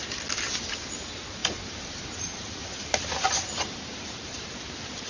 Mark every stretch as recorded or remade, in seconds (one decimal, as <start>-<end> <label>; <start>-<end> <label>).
0.0-1.4 recorded; 1.4-4.5 remade; 4.5-5.1 recorded